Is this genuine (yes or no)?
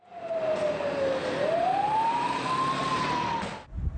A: yes